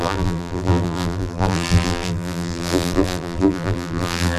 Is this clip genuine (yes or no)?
no